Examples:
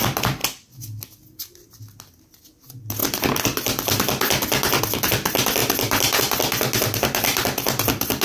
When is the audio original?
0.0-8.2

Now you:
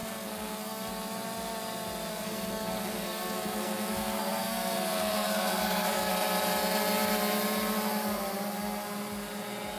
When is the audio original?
0.9-2.1; 6.1-9.8